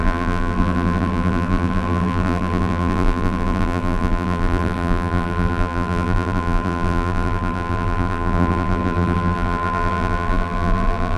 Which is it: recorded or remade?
remade